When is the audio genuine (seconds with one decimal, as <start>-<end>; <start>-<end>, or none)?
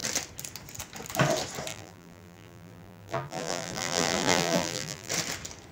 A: 0.0-1.7; 5.1-5.7